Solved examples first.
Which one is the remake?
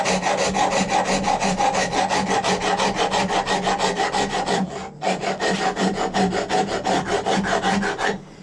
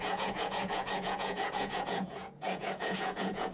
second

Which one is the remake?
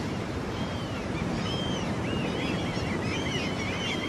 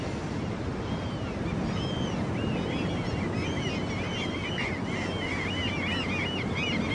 first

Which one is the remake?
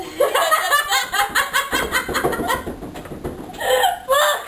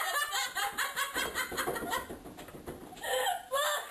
second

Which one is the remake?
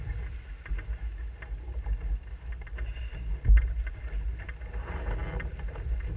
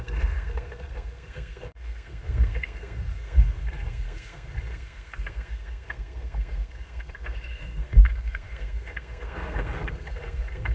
second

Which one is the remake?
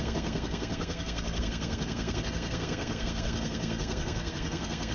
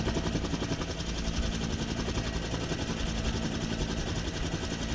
first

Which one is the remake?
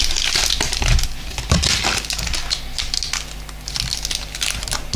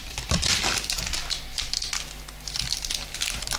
second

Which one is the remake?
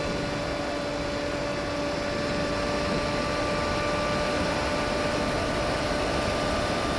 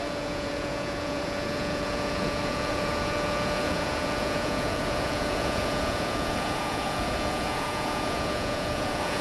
second